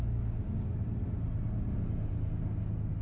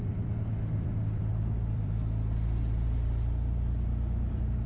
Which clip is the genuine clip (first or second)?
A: first